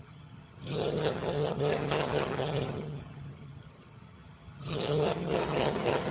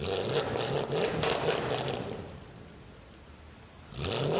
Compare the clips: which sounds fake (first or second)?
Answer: first